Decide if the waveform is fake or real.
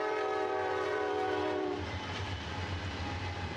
fake